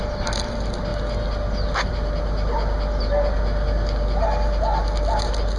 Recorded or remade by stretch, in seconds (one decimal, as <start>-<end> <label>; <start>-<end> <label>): 0.0-5.6 recorded